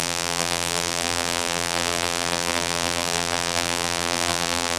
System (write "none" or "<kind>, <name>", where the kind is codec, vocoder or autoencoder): vocoder, BigVGAN v2